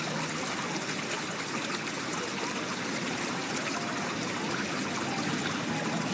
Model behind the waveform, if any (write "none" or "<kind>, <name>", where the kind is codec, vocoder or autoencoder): none